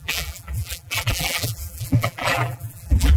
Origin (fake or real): fake